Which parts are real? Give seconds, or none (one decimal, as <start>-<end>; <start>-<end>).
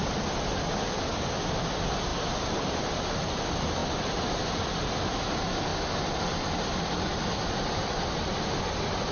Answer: 2.1-2.7; 3.8-4.5; 5.7-7.1